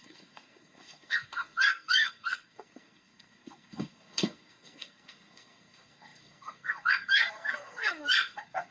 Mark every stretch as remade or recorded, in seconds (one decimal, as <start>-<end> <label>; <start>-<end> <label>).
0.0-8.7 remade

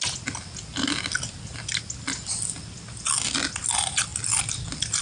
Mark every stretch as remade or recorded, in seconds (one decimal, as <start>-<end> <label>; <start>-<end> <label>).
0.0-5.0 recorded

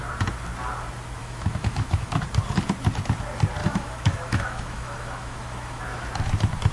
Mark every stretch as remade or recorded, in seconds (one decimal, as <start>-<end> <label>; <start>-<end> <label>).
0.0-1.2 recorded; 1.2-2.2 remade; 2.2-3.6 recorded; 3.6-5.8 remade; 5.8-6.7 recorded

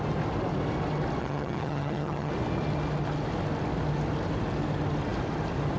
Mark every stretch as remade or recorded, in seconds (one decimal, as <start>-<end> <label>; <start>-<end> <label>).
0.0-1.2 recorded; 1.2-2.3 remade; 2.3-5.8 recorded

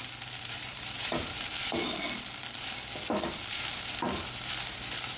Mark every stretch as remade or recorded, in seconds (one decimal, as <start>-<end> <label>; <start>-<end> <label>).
0.0-1.5 remade; 1.5-3.5 recorded; 3.5-5.2 remade

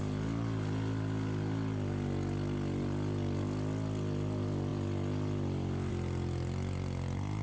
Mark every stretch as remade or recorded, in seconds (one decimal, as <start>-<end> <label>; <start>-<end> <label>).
0.0-7.4 recorded

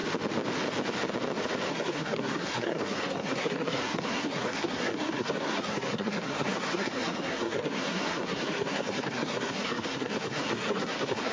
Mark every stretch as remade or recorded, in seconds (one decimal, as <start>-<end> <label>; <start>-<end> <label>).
0.0-1.7 recorded; 1.7-11.3 remade